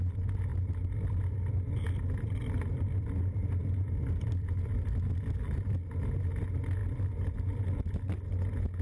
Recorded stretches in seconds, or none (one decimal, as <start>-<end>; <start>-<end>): 0.0-0.5; 5.2-6.8; 7.5-8.8